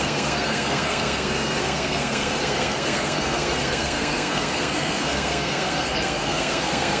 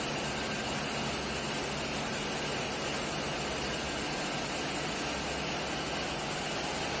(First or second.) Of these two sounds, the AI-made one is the first